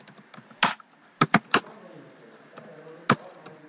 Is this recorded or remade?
recorded